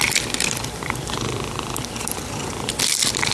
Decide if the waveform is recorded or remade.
remade